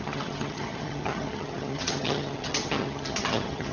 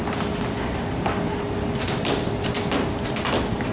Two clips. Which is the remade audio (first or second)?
first